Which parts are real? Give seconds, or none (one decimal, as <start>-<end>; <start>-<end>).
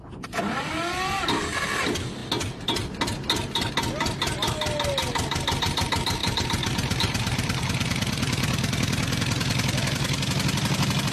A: 0.0-6.2; 7.6-11.1